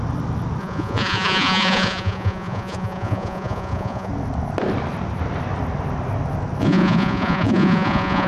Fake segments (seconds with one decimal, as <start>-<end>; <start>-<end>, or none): 0.6-4.1; 6.6-8.3